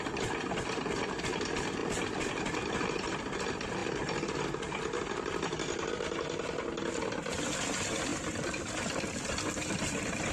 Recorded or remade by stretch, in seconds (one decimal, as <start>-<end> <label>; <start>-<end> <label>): 0.0-3.8 recorded; 3.8-5.9 remade; 5.9-8.1 recorded; 8.1-9.0 remade; 9.0-10.3 recorded